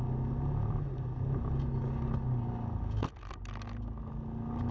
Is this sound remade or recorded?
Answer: recorded